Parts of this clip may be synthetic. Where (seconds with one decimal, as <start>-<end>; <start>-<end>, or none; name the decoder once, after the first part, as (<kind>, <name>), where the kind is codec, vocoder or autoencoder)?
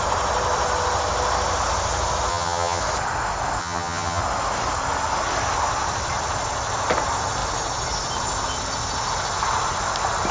2.3-2.8 (vocoder, HiFi-GAN); 3.6-4.2